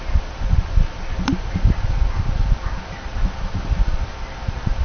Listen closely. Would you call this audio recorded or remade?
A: recorded